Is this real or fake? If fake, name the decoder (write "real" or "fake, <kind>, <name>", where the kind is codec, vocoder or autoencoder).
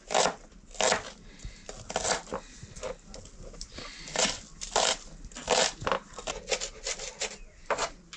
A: real